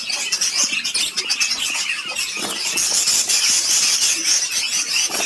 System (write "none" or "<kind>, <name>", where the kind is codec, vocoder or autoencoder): none